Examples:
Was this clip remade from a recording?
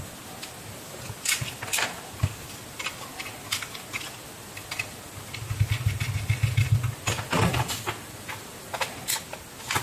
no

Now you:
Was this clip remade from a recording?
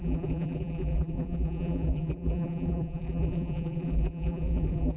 yes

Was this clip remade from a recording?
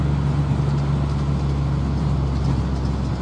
no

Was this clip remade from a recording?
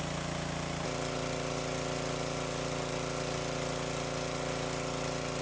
no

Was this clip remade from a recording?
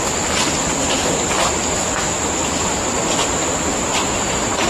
no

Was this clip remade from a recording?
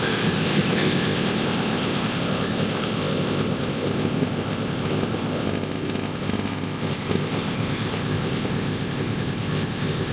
yes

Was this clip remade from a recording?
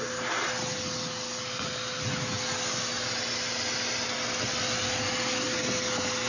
no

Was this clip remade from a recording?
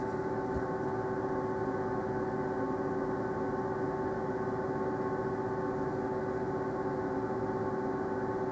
no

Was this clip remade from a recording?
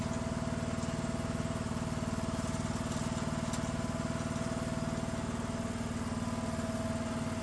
no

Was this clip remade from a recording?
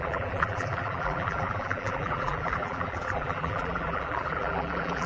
yes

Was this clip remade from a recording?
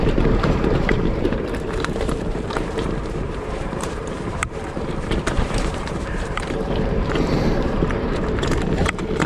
yes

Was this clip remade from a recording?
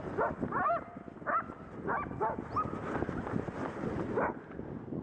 no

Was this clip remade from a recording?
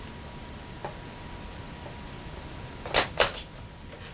no